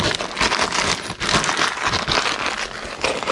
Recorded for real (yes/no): yes